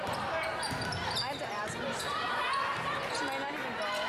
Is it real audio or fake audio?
real